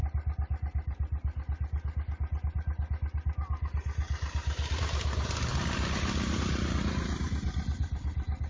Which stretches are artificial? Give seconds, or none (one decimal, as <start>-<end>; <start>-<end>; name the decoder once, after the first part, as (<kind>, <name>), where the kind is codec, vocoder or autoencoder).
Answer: none